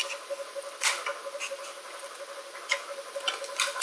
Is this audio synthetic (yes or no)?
yes